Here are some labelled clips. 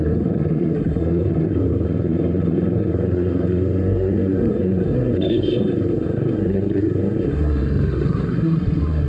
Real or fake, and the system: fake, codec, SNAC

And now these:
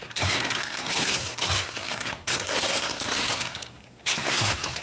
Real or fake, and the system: fake, codec, SNAC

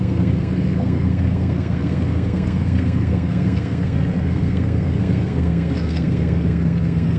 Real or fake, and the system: fake, codec, SNAC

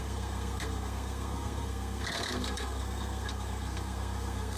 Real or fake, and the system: fake, codec, SNAC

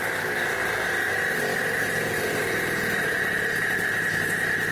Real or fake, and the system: real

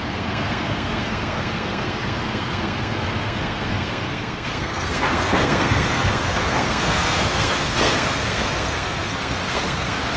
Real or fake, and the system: fake, codec, SNAC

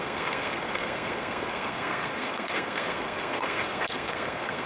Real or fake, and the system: fake, codec, SNAC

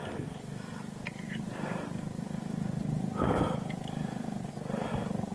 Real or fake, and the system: real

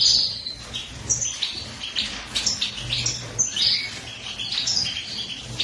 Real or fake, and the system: real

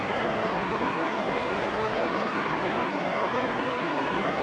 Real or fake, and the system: fake, codec, SNAC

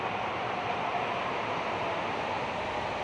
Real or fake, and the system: real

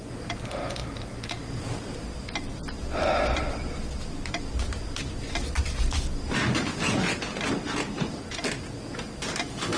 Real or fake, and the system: real